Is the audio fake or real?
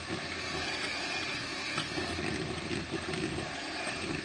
real